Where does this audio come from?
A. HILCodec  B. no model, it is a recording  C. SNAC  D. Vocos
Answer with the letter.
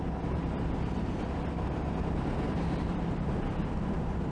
B